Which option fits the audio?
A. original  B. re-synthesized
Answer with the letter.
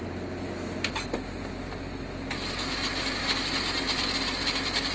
A